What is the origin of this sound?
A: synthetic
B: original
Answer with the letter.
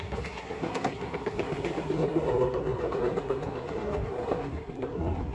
A